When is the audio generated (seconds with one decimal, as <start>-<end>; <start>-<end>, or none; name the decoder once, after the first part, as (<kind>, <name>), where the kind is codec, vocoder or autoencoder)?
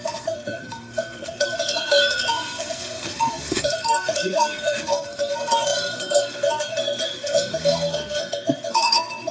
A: 0.0-9.3 (codec, SNAC)